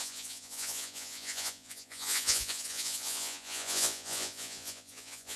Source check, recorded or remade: remade